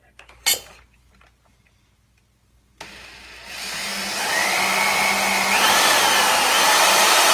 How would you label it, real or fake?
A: real